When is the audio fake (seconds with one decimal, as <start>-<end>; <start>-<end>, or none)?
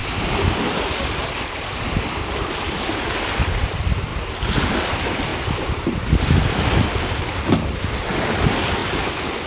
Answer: 0.0-4.1; 4.7-5.3; 6.4-8.8